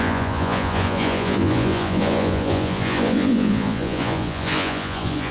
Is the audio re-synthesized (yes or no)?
yes